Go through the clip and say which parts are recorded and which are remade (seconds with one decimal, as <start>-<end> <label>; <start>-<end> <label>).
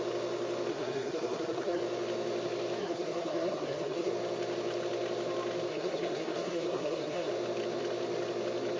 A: 0.0-0.7 recorded; 0.7-1.8 remade; 1.8-2.8 recorded; 2.8-4.1 remade; 4.1-5.7 recorded; 5.7-7.3 remade; 7.3-8.8 recorded